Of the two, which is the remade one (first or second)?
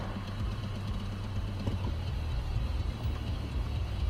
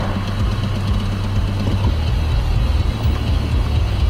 first